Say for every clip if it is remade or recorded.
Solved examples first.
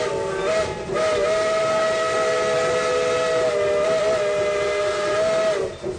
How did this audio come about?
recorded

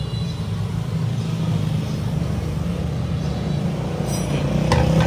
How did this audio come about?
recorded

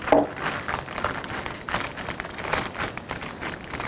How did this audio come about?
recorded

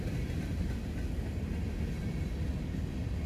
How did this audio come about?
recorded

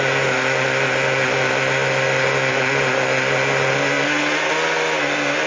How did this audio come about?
recorded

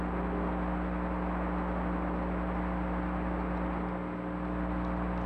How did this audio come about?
recorded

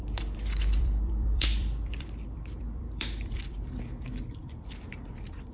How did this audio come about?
remade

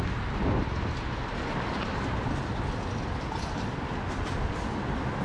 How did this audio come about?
recorded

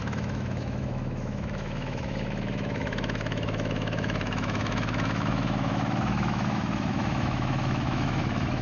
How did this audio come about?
remade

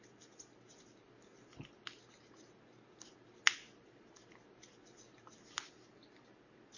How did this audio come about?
recorded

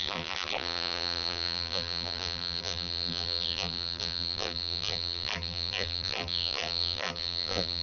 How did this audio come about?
remade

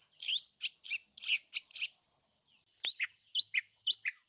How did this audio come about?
recorded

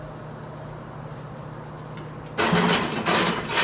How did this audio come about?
recorded